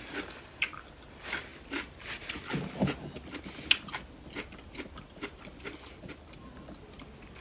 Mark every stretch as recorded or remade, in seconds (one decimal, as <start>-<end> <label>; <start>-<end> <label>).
0.0-7.4 recorded